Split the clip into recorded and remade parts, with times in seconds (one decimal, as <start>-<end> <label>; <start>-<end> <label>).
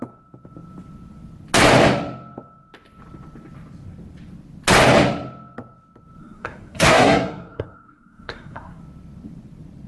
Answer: 0.0-6.2 recorded; 6.2-8.8 remade; 8.8-9.9 recorded